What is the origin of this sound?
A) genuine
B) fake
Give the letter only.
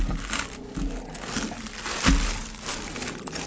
A